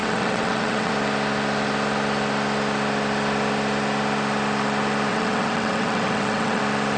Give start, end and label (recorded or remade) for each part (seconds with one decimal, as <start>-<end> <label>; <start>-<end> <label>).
0.0-0.9 remade; 0.9-5.1 recorded; 5.1-6.6 remade; 6.6-7.0 recorded